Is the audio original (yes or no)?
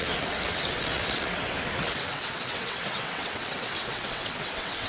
no